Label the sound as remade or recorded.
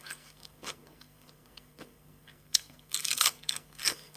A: remade